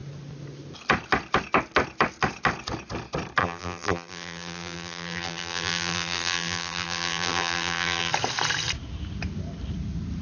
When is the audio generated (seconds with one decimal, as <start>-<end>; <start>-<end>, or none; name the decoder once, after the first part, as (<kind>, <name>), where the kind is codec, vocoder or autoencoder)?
3.4-8.1 (vocoder, BigVGAN v2)